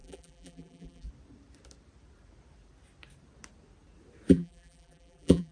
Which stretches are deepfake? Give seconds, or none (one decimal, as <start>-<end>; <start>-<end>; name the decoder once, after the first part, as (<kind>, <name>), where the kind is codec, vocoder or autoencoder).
0.0-1.1 (vocoder, BigVGAN v2); 4.3-5.5